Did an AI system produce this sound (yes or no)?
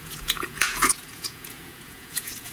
yes